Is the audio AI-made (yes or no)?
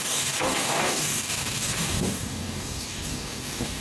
yes